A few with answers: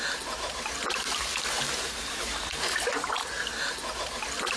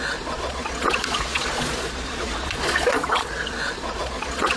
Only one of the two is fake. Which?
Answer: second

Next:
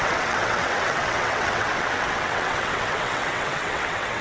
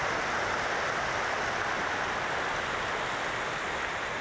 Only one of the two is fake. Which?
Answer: first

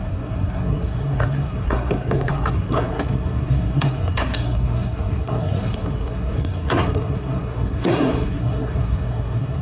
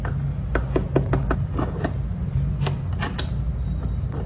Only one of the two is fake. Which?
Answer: first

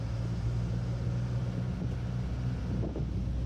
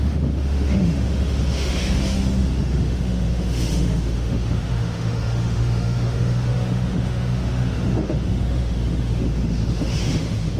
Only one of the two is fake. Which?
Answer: second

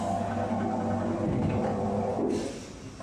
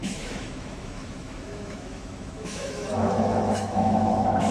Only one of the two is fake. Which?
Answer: second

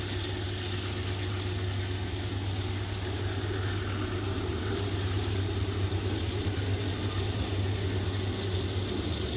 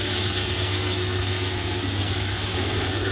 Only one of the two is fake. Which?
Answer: second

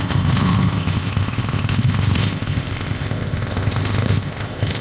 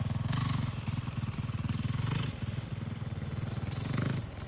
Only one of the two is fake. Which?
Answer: first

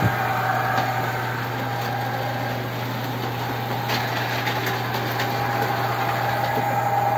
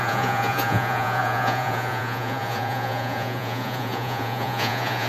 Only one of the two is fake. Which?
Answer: second